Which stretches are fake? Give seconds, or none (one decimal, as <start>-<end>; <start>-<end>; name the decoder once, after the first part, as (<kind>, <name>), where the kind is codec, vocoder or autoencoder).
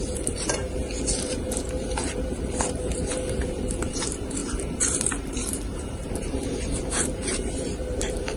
0.0-0.6 (vocoder, BigVGAN v2); 1.2-8.4